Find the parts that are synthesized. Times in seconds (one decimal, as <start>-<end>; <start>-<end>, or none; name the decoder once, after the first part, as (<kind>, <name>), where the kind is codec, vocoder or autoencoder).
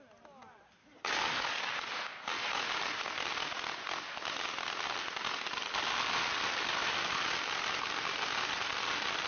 0.8-1.7 (codec, DAC)